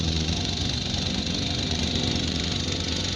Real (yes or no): no